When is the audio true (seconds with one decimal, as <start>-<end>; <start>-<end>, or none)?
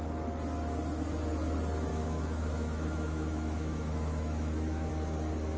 0.0-1.9; 4.9-5.6